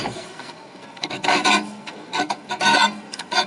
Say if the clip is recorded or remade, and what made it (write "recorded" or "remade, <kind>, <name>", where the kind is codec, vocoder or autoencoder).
remade, codec, SNAC